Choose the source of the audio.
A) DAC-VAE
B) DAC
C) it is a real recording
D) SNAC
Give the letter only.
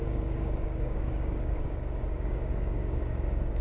B